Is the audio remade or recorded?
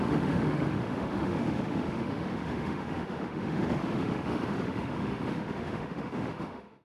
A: remade